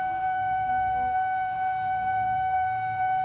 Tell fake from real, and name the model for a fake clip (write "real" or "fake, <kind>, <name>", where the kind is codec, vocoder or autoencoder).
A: fake, codec, SNAC